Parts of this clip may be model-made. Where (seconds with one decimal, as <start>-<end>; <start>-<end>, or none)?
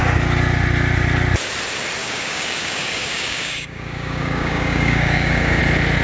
2.0-5.6